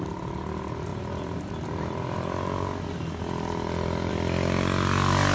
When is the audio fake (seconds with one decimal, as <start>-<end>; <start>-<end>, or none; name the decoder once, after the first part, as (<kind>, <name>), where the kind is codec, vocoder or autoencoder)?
none

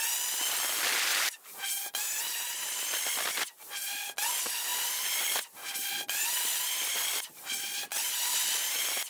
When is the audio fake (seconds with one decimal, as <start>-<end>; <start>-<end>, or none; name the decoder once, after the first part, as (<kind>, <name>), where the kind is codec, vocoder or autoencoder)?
1.1-2.2 (vocoder, BigVGAN v2)